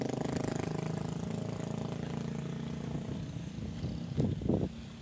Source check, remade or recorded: recorded